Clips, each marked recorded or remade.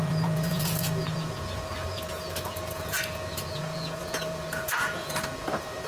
remade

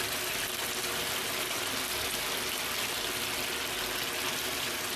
recorded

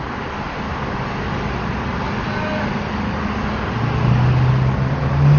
recorded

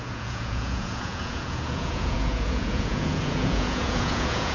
remade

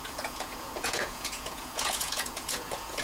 remade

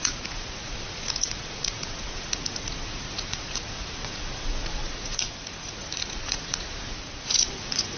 remade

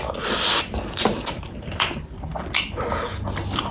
recorded